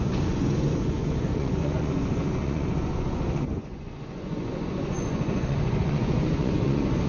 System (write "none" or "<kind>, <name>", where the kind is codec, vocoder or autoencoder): vocoder, Vocos